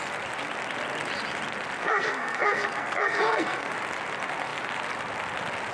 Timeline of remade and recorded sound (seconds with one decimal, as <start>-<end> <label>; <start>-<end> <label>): 0.0-1.8 recorded; 1.8-3.7 remade; 3.7-5.7 recorded